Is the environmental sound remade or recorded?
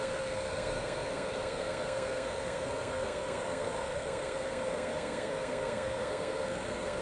remade